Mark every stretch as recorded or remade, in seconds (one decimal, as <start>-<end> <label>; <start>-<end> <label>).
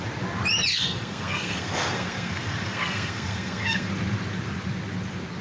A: 0.0-0.7 recorded; 0.7-3.9 remade; 3.9-5.4 recorded